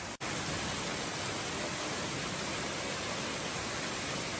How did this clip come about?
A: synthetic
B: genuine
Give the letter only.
B